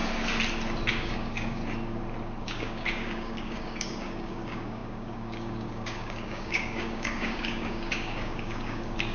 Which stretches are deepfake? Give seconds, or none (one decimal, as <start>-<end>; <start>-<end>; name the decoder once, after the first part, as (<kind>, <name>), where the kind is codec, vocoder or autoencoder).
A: 0.9-1.6 (codec, DAC); 2.4-9.1